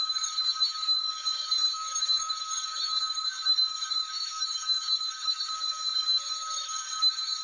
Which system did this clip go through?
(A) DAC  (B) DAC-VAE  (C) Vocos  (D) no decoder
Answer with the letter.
A